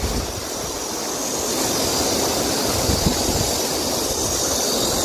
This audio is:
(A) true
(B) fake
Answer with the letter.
A